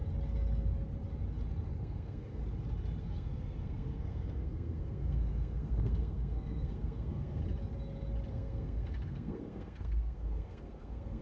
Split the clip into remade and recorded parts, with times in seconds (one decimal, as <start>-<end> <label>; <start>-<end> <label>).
0.0-1.8 recorded; 1.8-2.4 remade; 2.4-3.0 recorded; 3.0-7.4 remade; 7.4-8.3 recorded; 8.3-11.2 remade